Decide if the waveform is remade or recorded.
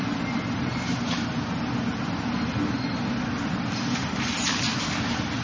recorded